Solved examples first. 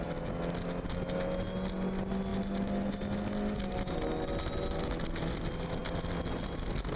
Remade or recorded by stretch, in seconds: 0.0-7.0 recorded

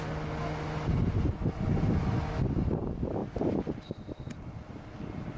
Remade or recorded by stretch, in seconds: 0.0-5.4 recorded

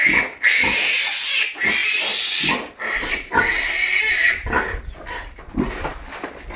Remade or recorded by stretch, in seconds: 0.0-1.8 recorded; 1.8-5.4 remade; 5.4-6.6 recorded

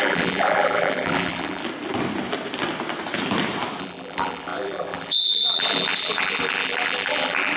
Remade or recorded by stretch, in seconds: 0.0-1.6 remade; 1.6-3.8 recorded; 3.8-7.6 remade

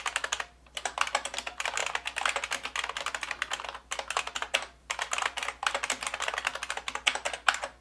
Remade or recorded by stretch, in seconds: 0.0-7.8 recorded